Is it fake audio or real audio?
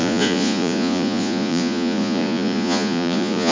fake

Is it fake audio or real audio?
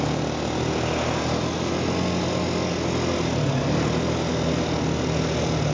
real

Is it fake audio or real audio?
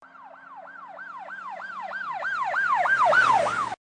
real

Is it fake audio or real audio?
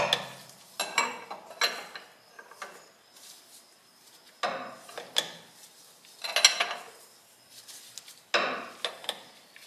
real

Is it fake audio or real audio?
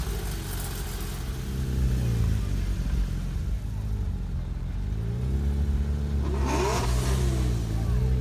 real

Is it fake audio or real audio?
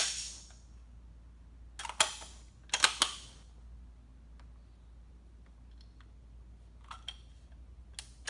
real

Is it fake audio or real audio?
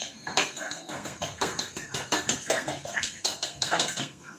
fake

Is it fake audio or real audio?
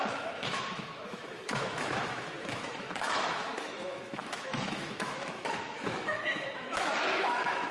fake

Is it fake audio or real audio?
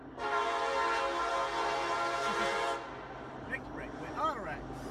real